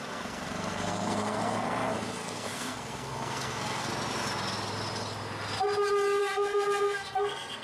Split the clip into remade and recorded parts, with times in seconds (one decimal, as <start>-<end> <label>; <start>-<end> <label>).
0.0-3.9 remade; 3.9-6.2 recorded; 6.2-7.6 remade